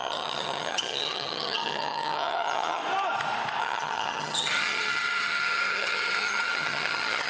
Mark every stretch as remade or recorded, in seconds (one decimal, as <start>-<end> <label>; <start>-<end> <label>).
0.0-2.8 remade; 2.8-3.6 recorded; 3.6-7.3 remade